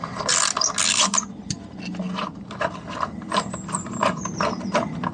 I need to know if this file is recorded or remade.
recorded